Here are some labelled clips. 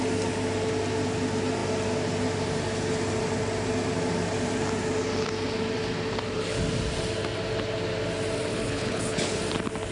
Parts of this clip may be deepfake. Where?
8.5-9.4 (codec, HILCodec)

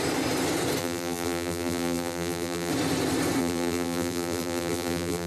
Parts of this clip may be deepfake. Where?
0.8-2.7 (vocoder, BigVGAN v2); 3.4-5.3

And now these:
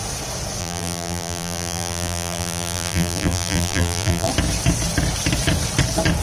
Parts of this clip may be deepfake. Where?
0.6-4.3 (vocoder, BigVGAN v2)

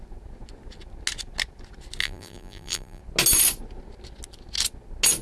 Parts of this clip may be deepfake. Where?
2.0-3.0 (vocoder, BigVGAN v2)

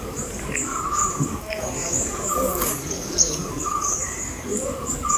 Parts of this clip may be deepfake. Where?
0.0-5.2 (codec, DAC)

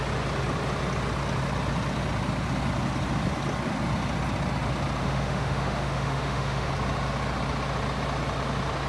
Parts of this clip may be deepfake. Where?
5.0-6.7 (autoencoder, DAC-VAE)